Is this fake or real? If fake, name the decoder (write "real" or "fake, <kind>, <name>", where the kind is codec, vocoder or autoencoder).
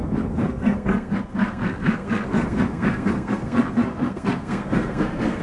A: fake, codec, SNAC